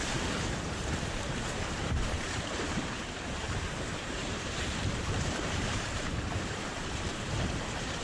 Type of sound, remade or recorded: remade